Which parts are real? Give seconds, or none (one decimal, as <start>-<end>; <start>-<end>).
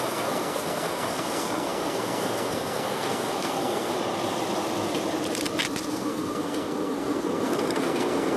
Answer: 3.9-5.9